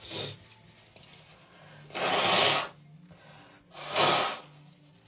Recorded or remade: recorded